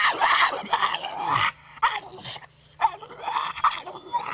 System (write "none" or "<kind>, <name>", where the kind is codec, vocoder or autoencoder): none